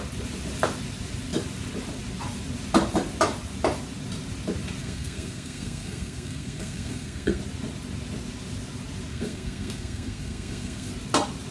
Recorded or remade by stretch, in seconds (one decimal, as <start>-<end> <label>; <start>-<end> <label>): 0.0-4.8 recorded; 4.8-7.4 remade; 7.4-9.1 recorded; 9.1-10.9 remade; 10.9-11.5 recorded